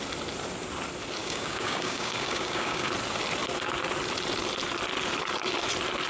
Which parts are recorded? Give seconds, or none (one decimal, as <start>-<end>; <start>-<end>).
0.0-1.2; 2.9-6.1

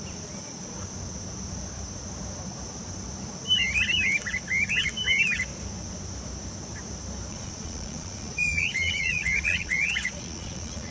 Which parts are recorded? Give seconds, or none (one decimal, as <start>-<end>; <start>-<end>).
0.0-7.3

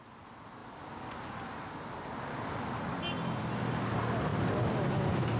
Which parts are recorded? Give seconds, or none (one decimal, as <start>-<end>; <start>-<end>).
0.0-5.4

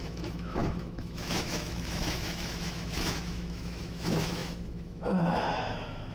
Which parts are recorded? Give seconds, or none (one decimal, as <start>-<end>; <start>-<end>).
none